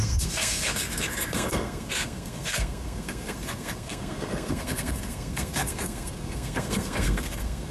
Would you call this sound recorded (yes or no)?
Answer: no